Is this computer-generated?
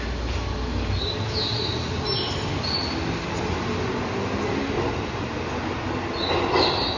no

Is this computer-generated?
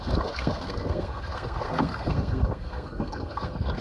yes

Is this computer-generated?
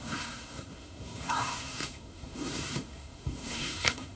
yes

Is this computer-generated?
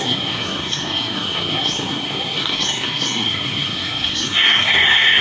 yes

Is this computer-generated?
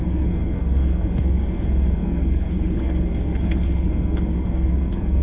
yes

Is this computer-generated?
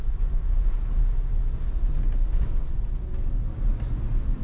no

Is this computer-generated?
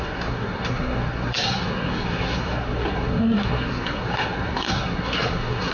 yes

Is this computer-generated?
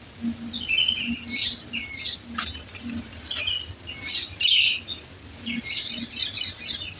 no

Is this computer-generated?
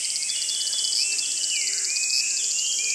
no